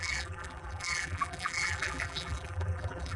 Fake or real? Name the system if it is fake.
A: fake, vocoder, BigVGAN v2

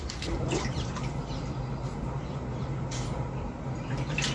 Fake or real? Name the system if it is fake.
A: real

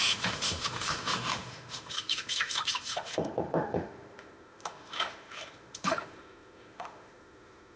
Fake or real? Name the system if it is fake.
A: fake, autoencoder, DAC-VAE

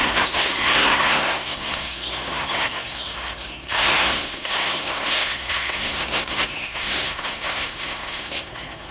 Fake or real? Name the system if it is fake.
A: fake, codec, SNAC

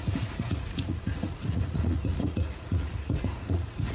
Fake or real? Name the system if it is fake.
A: fake, vocoder, Vocos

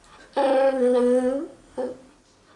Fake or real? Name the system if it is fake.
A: real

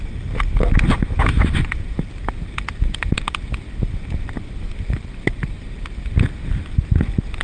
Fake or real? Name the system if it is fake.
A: real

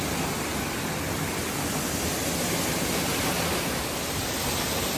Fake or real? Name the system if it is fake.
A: real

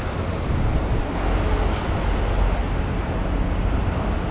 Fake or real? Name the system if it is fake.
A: real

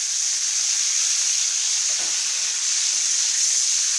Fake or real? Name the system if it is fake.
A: real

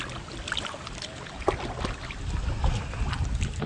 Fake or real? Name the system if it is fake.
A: real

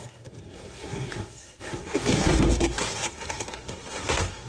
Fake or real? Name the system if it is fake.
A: fake, codec, SNAC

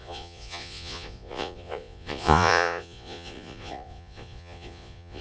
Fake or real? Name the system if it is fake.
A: fake, vocoder, Vocos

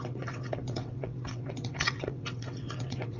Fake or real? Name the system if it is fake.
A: fake, vocoder, WaveNeXt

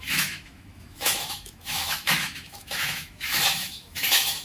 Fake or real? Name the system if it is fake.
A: fake, autoencoder, DAC-VAE